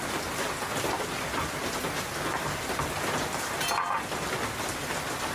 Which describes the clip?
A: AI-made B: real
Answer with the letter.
B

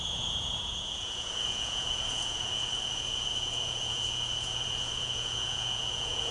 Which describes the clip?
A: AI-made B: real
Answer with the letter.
A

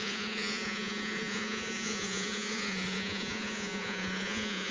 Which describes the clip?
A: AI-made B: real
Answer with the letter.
A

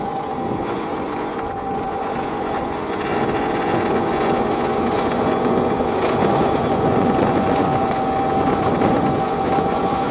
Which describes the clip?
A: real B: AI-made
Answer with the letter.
B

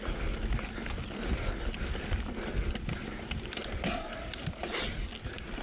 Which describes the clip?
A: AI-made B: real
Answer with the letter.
B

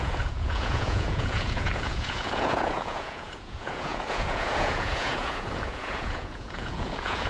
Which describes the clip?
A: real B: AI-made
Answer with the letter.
B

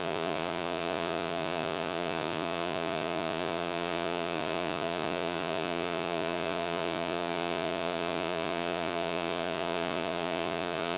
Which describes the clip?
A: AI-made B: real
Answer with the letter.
A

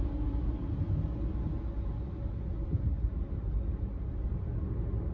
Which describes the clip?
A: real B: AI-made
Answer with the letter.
A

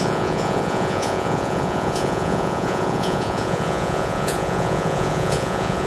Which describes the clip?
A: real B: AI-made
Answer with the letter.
B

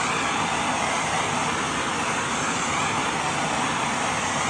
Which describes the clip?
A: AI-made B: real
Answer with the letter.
B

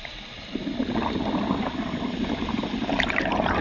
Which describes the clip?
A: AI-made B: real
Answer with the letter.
B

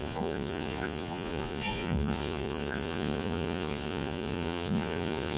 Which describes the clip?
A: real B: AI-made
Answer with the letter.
B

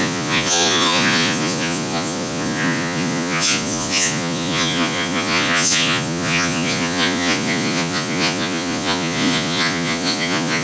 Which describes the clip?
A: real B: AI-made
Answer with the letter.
B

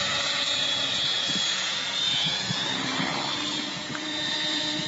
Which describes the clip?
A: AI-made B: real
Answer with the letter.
A